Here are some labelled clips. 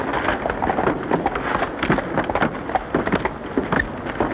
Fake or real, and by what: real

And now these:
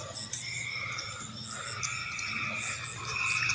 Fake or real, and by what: real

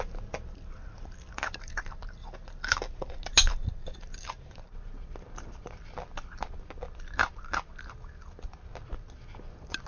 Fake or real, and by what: real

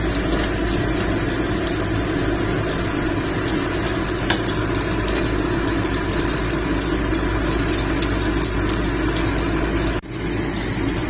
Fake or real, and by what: real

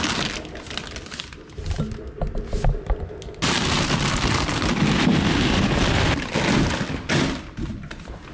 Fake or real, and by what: real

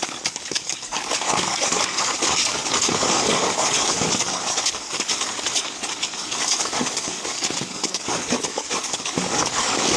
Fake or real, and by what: fake, codec, DAC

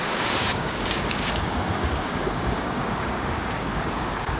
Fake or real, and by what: fake, codec, DAC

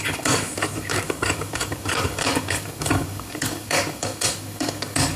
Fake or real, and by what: fake, codec, DAC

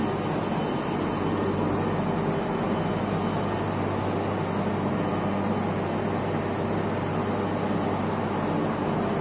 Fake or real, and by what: real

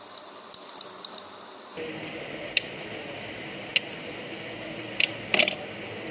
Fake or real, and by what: real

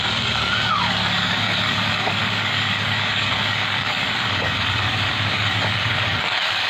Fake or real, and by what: fake, codec, DAC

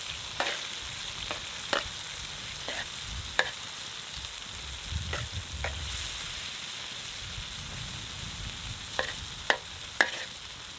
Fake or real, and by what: real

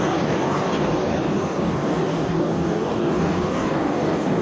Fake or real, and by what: fake, codec, DAC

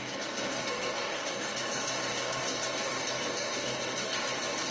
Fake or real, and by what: fake, codec, DAC